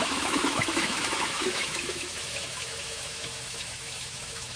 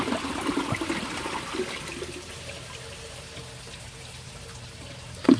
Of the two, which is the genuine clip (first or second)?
second